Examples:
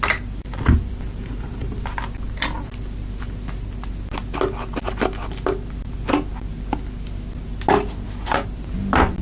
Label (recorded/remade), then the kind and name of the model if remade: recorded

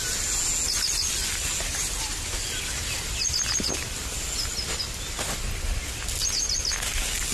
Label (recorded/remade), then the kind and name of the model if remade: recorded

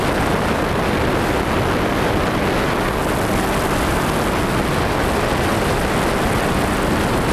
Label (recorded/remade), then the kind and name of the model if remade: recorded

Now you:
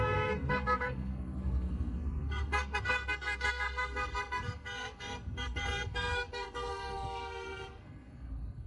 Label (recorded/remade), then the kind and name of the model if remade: remade, codec, SNAC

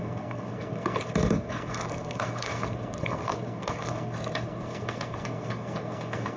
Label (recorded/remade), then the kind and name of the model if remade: remade, codec, SNAC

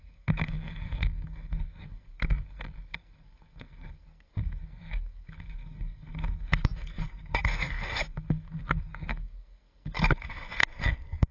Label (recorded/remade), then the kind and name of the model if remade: remade, codec, SNAC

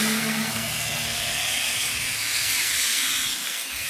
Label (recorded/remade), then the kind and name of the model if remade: remade, codec, SNAC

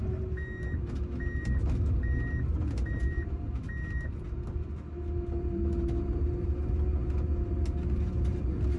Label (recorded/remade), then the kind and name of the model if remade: recorded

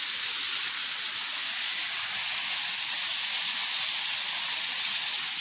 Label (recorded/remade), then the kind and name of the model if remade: recorded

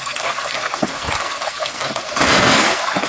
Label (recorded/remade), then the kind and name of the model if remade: remade, codec, SNAC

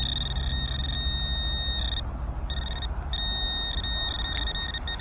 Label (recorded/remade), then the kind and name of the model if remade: recorded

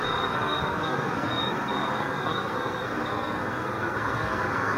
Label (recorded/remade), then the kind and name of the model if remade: remade, codec, SNAC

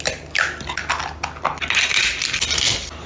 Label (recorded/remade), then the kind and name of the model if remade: recorded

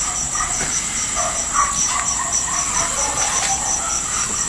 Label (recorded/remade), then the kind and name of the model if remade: recorded